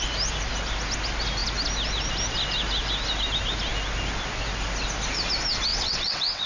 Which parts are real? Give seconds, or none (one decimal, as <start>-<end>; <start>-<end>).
0.0-5.7